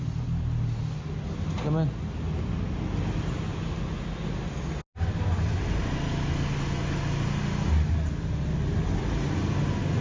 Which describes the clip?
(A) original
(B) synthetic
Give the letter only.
A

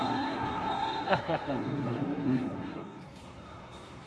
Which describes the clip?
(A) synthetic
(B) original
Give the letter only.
A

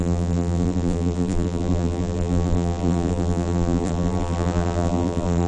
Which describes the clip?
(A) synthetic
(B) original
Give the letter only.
A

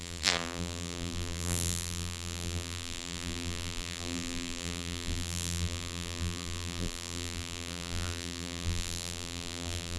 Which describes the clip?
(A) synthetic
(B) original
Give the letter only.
A